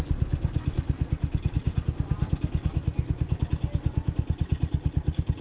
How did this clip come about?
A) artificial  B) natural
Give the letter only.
B